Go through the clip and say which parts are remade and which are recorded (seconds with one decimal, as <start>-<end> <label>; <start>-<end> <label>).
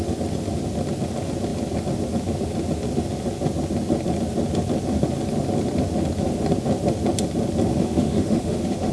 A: 0.0-7.7 recorded; 7.7-8.9 remade